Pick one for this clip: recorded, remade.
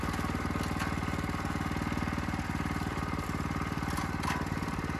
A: recorded